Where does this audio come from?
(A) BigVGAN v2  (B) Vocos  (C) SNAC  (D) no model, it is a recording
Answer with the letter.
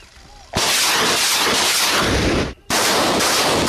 A